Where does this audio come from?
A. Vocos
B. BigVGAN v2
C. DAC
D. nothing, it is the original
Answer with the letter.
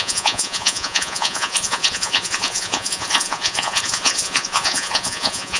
A